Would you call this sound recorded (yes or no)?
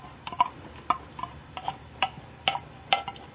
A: yes